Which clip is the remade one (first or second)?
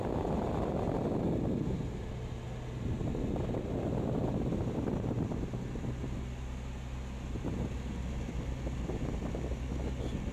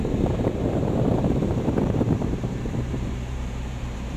second